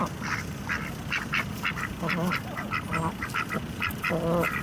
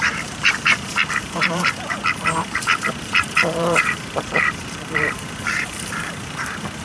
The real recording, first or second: first